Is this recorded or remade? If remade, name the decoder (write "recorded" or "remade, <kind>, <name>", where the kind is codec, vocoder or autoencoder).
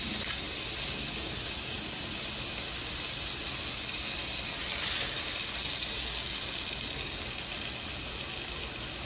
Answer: recorded